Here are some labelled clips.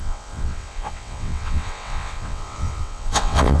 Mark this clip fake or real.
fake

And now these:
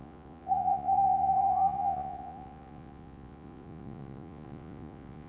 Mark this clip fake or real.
fake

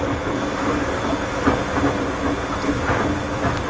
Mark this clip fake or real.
real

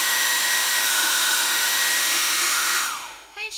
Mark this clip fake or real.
fake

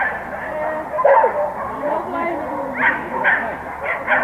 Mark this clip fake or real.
real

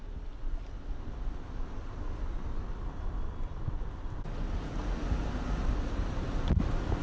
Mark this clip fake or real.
real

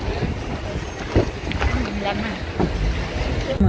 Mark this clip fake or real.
real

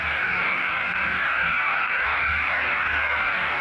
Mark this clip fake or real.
fake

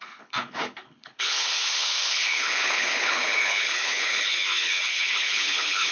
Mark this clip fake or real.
fake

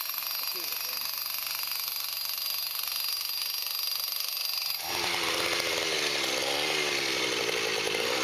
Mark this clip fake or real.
real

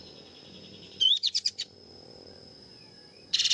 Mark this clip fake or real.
fake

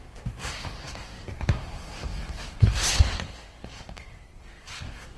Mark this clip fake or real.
fake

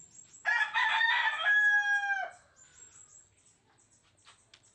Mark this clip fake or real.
real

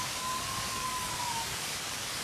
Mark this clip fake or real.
fake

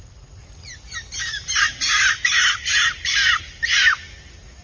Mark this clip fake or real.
real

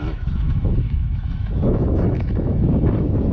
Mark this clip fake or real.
fake